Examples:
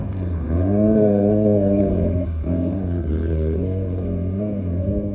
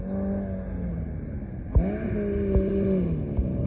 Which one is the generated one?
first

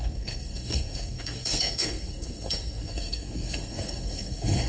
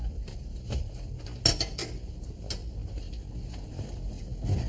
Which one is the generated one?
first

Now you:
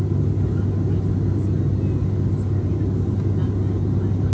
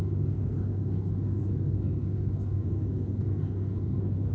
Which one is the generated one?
second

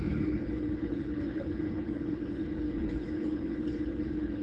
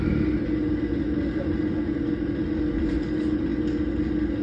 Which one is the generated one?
first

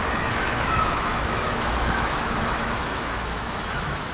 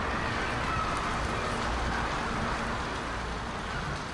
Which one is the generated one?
first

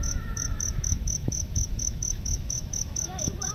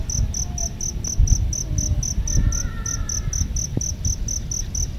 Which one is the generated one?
first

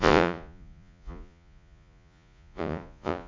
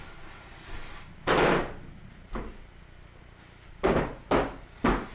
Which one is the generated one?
first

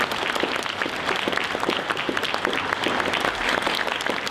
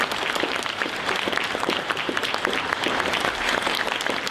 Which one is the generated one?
second